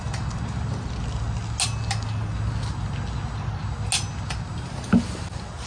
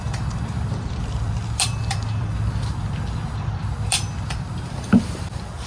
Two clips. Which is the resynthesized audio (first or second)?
second